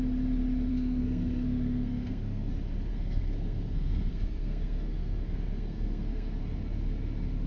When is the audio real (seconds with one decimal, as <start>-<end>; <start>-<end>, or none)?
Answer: 0.0-0.7; 2.5-2.9; 6.4-7.5